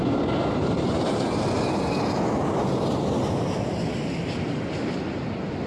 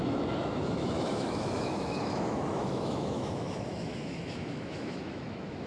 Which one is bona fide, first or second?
first